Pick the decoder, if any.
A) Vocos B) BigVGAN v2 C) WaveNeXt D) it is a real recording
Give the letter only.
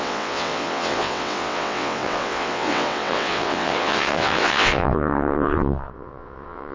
C